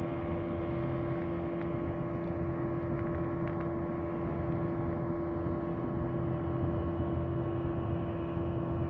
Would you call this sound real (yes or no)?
yes